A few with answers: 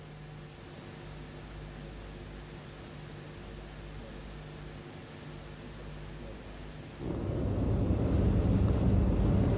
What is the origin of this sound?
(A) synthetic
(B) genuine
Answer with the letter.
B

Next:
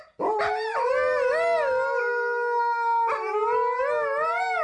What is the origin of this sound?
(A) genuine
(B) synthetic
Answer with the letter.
A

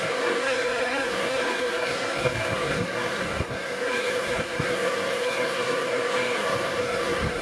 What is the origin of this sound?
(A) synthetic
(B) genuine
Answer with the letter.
A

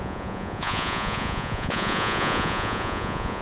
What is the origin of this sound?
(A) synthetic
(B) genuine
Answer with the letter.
A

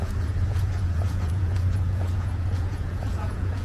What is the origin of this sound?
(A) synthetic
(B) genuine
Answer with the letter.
A